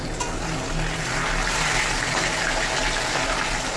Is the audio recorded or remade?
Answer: recorded